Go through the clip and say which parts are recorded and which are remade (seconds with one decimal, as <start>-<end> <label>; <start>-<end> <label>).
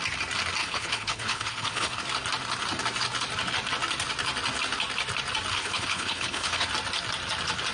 0.0-0.6 recorded; 0.6-2.0 remade; 2.0-5.5 recorded; 5.5-6.7 remade; 6.7-7.7 recorded